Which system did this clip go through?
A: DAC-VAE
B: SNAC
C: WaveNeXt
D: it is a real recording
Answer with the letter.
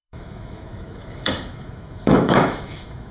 A